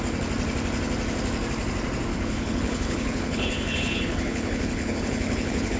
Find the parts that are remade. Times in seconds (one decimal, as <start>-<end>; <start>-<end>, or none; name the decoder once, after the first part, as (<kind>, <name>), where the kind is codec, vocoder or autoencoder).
2.1-5.8 (codec, HILCodec)